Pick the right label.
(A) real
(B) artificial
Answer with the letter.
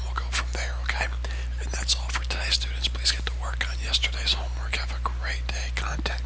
A